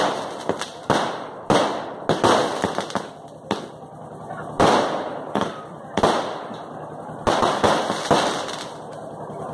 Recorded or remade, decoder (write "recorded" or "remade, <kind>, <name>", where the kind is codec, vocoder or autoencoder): recorded